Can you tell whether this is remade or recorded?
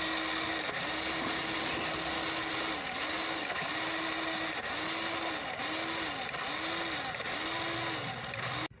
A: recorded